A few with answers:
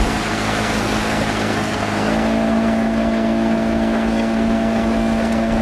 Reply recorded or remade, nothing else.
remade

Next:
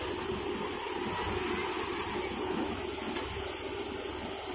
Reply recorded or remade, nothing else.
recorded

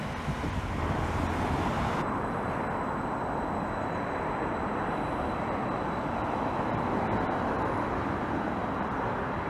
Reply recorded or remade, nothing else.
recorded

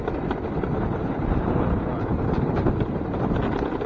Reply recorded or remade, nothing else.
recorded